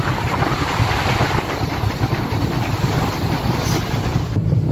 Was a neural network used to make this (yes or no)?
no